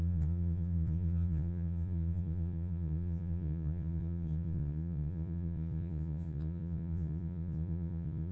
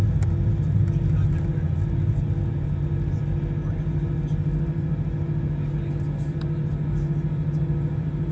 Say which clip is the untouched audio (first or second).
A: second